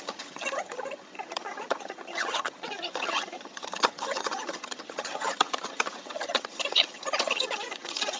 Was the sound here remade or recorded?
remade